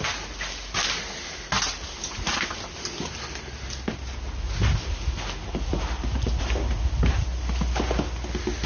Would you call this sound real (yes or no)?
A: yes